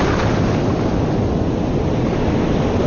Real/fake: real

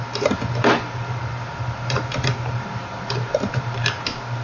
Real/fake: fake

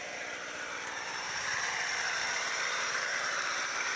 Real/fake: fake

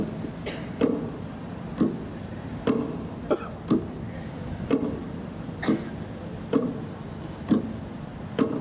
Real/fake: fake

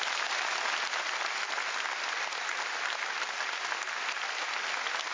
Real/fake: real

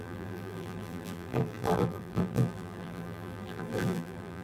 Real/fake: fake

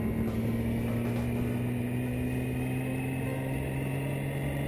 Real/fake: real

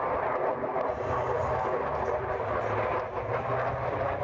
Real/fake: real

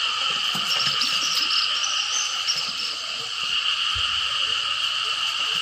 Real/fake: fake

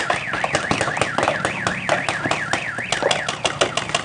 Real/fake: real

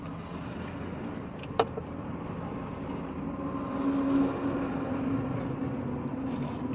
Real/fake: real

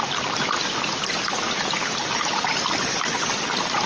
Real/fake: real